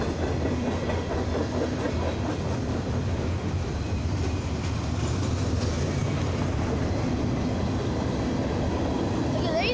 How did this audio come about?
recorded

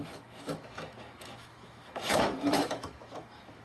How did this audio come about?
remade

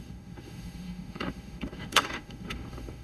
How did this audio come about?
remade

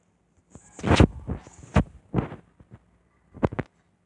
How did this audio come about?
recorded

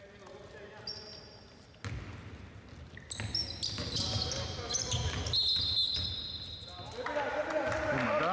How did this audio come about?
recorded